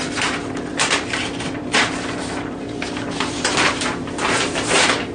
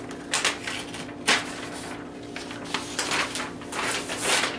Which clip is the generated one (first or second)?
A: first